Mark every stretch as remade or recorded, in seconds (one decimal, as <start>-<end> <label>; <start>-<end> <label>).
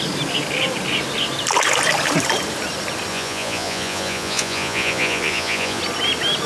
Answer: 0.0-3.1 recorded; 3.1-5.8 remade; 5.8-6.5 recorded